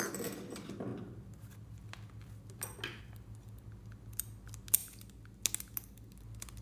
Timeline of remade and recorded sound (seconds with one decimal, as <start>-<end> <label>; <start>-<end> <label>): 0.0-6.6 recorded